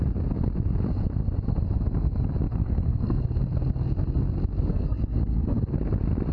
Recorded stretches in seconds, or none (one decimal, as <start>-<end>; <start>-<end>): 0.0-2.6; 3.2-4.7; 5.6-6.3